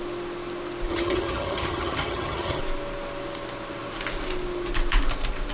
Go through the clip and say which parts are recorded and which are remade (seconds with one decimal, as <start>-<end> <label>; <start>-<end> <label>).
0.0-0.9 recorded; 0.9-2.6 remade; 2.6-5.5 recorded